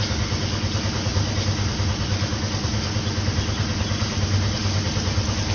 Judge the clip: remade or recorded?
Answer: recorded